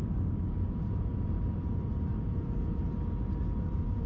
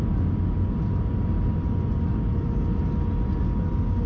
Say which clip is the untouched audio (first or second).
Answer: second